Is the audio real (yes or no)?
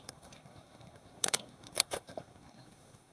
no